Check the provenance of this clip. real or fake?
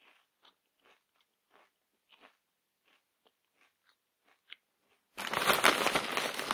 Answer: real